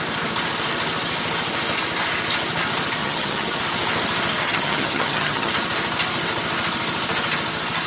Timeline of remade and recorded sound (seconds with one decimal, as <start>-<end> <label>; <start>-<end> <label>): 0.0-3.0 recorded; 3.0-3.6 remade; 3.6-4.4 recorded; 4.4-5.5 remade; 5.5-7.9 recorded